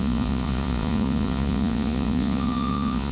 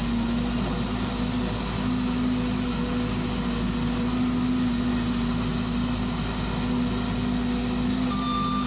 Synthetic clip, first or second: first